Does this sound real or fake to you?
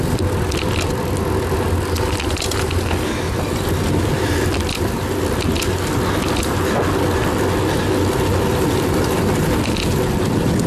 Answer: real